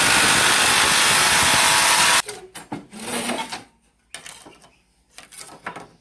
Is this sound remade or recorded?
recorded